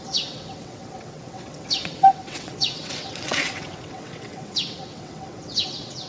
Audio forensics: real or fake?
fake